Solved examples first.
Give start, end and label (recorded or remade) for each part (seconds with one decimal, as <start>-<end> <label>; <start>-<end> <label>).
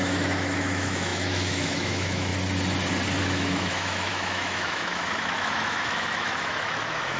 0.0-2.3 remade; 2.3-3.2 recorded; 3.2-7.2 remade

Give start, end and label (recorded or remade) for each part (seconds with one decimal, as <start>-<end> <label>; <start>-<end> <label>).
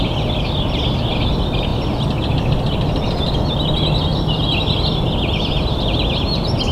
0.0-6.7 recorded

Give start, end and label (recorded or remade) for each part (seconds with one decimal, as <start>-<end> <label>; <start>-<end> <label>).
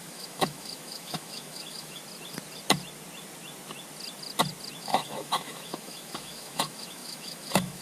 0.0-2.0 remade; 2.0-4.8 recorded; 4.8-7.8 remade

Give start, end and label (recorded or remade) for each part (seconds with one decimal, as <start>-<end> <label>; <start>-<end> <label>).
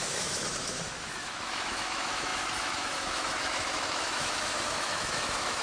0.0-5.6 remade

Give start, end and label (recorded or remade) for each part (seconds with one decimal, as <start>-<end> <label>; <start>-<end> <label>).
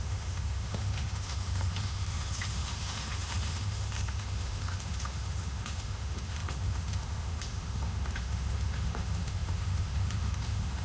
0.0-10.8 remade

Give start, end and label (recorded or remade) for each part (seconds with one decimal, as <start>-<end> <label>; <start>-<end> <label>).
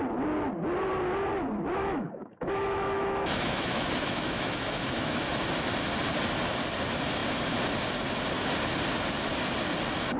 0.0-1.8 recorded; 1.8-5.2 remade; 5.2-10.2 recorded